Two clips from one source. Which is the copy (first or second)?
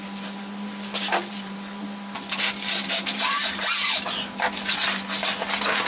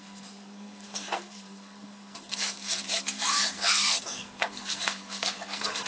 second